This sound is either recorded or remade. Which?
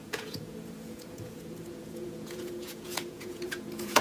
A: remade